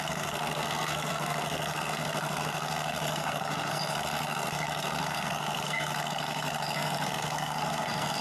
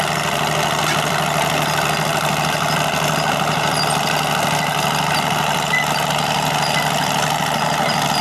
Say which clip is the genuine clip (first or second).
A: second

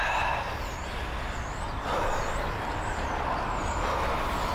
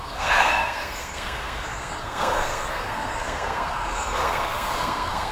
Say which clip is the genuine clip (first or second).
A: first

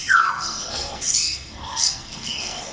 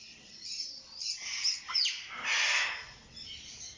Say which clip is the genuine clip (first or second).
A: second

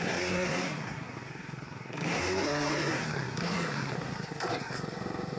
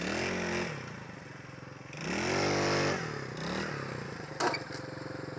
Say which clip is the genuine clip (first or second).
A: second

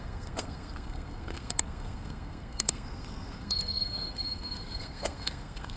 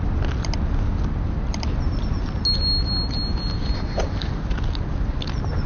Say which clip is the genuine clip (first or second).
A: second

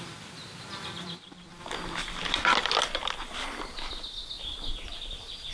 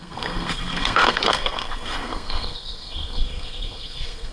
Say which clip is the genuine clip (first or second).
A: first